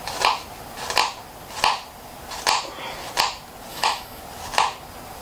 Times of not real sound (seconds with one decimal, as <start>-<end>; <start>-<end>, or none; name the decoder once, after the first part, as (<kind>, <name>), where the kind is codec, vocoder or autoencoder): 3.7-4.2 (autoencoder, DAC-VAE)